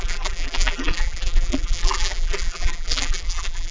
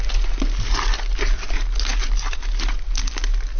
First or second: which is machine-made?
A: first